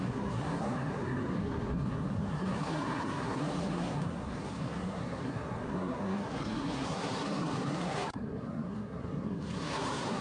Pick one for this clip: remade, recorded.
remade